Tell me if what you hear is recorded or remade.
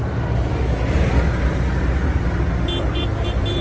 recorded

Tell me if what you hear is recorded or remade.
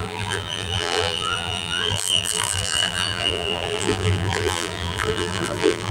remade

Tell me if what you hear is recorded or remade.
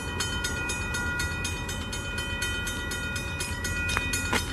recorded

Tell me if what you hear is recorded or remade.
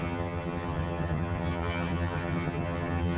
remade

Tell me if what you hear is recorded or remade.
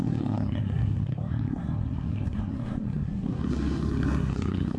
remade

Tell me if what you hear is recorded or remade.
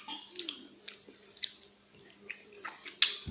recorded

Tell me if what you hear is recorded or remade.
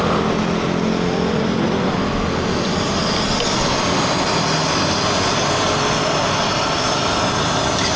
recorded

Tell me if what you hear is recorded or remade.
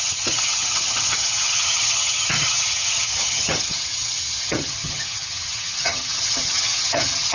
remade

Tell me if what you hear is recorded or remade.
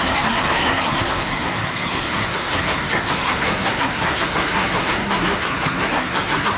remade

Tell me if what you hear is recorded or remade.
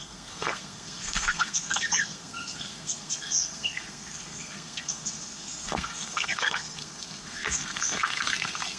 remade